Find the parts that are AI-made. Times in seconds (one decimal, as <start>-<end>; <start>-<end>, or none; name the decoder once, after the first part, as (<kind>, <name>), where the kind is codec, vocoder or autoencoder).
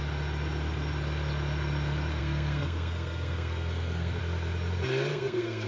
2.2-4.2 (codec, SNAC); 5.1-5.7